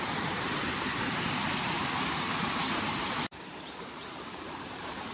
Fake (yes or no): yes